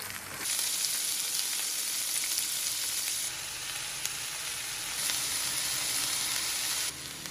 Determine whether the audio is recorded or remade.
recorded